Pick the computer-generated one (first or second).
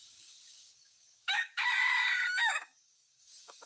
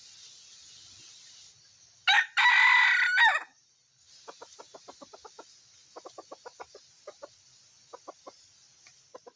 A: first